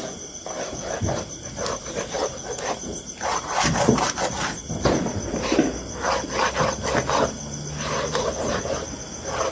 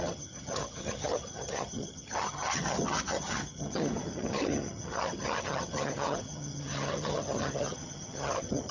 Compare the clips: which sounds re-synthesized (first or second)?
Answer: second